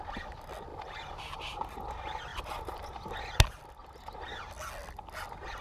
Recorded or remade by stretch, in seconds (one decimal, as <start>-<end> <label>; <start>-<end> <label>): 0.0-0.7 recorded; 0.7-1.8 remade; 1.8-2.3 recorded; 2.3-3.1 remade; 3.1-3.8 recorded; 3.8-4.3 remade; 4.3-5.6 recorded